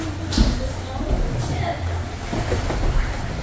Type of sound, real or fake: real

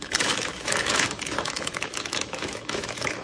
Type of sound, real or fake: fake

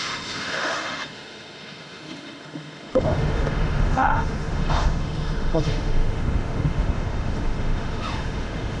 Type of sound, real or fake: fake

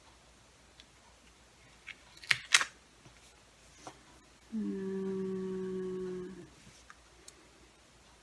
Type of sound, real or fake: real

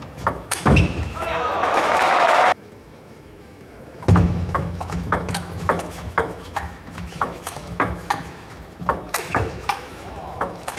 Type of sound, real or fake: fake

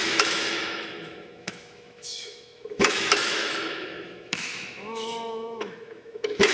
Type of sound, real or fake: fake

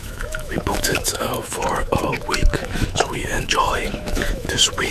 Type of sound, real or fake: fake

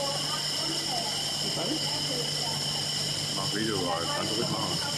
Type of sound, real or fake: real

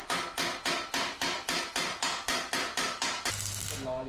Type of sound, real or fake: real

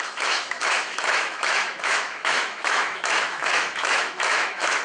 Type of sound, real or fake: fake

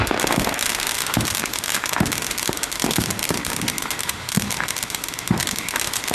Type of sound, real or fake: fake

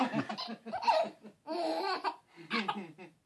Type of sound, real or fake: real